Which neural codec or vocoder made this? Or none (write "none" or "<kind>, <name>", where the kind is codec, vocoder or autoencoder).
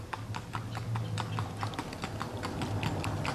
none